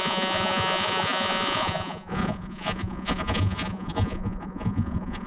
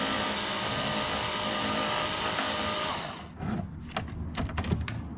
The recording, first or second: second